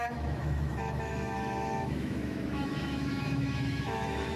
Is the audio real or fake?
fake